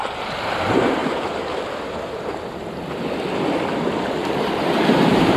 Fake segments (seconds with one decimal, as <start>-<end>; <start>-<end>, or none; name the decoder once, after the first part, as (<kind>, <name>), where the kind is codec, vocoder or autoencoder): 1.0-1.5 (vocoder, BigVGAN v2); 4.2-5.4